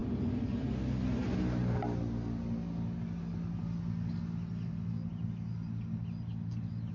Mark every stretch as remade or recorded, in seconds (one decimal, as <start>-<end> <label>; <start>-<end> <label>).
0.0-6.9 recorded